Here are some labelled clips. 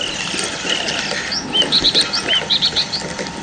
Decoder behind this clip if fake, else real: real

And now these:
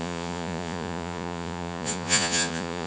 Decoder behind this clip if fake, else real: fake, vocoder, Vocos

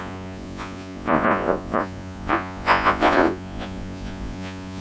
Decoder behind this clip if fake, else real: fake, vocoder, Vocos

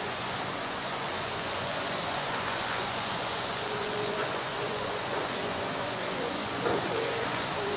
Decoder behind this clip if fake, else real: fake, vocoder, Vocos